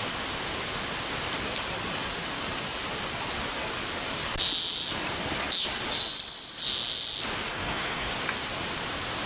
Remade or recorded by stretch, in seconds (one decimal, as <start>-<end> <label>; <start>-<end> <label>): 0.0-7.5 recorded; 7.5-8.1 remade; 8.1-9.3 recorded